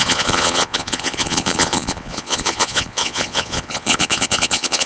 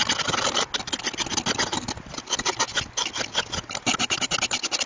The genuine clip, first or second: second